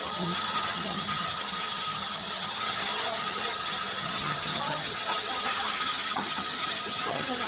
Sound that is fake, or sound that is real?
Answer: fake